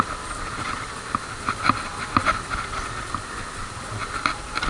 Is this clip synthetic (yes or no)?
no